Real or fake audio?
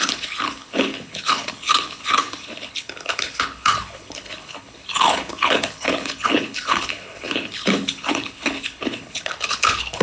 fake